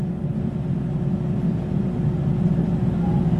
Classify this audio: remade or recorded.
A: recorded